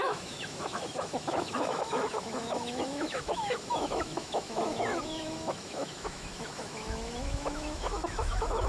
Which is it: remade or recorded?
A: remade